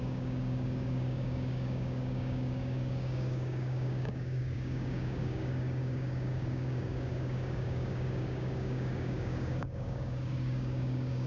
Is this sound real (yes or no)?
no